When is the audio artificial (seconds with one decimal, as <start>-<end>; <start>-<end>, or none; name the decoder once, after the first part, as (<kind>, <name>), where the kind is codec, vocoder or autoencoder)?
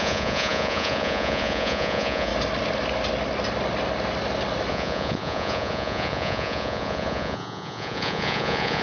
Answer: 0.0-2.3 (vocoder, Vocos); 4.7-8.8